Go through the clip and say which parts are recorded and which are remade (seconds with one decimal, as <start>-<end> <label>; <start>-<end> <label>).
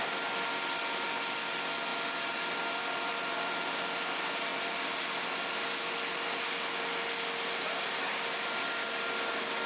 0.0-9.7 recorded